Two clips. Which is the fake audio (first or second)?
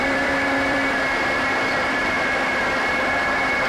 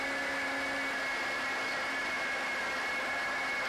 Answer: first